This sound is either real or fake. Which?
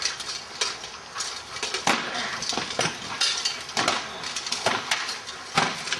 real